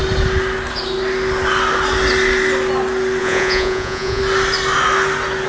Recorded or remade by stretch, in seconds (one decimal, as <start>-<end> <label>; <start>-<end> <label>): 0.0-3.2 recorded; 3.2-4.2 remade; 4.2-5.5 recorded